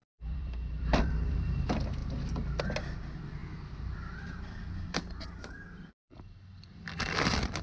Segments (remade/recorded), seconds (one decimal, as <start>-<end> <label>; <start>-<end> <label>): 0.0-1.6 remade; 1.6-2.0 recorded; 2.0-2.6 remade; 2.6-3.4 recorded; 3.4-5.0 remade; 5.0-7.6 recorded